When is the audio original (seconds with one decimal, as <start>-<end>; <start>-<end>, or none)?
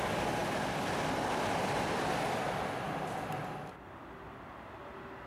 0.0-5.3